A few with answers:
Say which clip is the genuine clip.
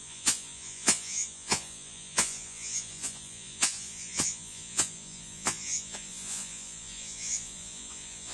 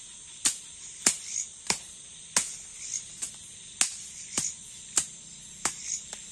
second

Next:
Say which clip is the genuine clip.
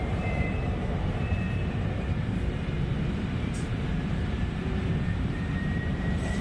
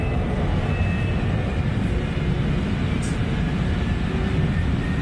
second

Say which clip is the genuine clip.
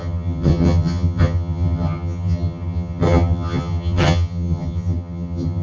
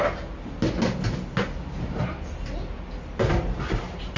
second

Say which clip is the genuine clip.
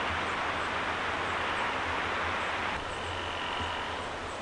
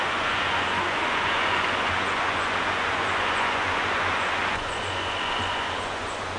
first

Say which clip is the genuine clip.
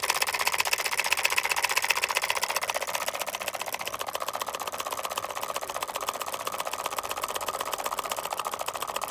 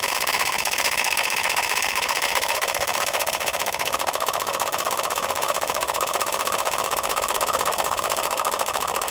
first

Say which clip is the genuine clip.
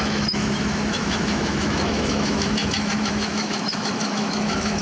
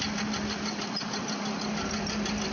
second